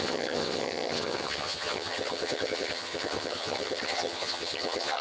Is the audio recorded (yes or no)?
no